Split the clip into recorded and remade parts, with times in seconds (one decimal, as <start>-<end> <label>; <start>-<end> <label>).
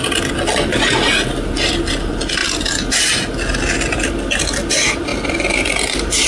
0.0-5.1 recorded; 5.1-6.3 remade